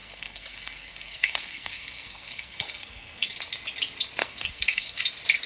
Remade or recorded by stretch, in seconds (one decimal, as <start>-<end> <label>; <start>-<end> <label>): 0.0-3.3 remade; 3.3-4.2 recorded; 4.2-5.0 remade; 5.0-5.5 recorded